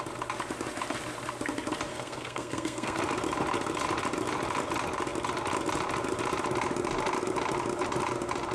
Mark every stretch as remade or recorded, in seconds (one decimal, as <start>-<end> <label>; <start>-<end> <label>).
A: 0.0-1.9 recorded; 1.9-3.0 remade; 3.0-8.5 recorded